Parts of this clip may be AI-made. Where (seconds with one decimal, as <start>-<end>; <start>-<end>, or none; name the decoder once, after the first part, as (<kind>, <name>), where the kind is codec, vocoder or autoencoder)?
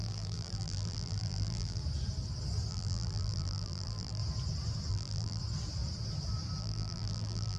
0.0-1.8 (vocoder, BigVGAN v2); 2.7-4.2; 4.9-5.4; 6.6-7.6